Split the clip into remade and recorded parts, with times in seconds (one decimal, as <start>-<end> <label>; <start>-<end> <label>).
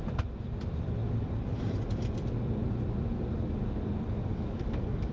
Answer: 0.0-4.3 recorded; 4.3-5.1 remade